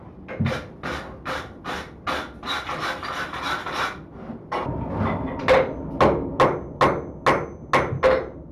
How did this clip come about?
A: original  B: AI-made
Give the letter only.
A